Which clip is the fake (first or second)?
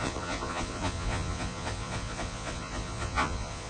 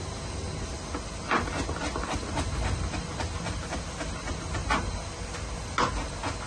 first